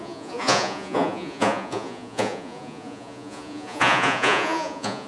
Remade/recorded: remade